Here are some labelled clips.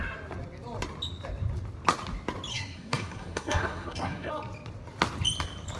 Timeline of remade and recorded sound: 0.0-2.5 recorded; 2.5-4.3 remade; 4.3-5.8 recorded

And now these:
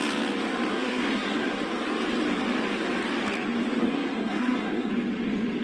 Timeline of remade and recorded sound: 0.0-0.7 recorded; 0.7-1.6 remade; 1.6-3.8 recorded; 3.8-4.9 remade; 4.9-5.6 recorded

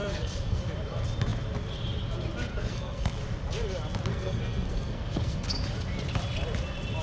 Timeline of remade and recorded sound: 0.0-0.6 remade; 0.6-2.5 recorded; 2.5-3.2 remade; 3.2-4.1 recorded; 4.1-5.5 remade; 5.5-7.0 recorded

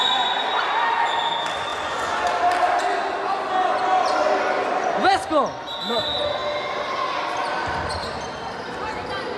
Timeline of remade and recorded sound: 0.0-1.7 recorded; 1.7-2.3 remade; 2.3-9.4 recorded

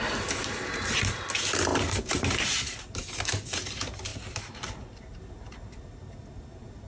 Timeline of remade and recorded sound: 0.0-1.7 recorded; 1.7-2.8 remade; 2.8-6.9 recorded

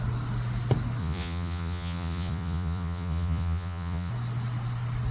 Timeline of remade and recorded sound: 0.0-1.0 recorded; 1.0-4.1 remade; 4.1-5.1 recorded

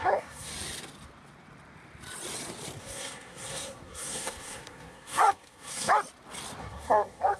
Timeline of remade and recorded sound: 0.0-0.5 remade; 0.5-2.8 recorded; 2.8-5.9 remade; 5.9-6.6 recorded; 6.6-7.4 remade